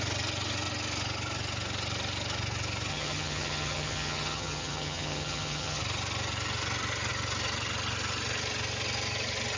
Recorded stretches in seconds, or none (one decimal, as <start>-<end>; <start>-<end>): 0.0-2.9; 5.8-9.6